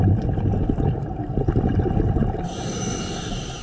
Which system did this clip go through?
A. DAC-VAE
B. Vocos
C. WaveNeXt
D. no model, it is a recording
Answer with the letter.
D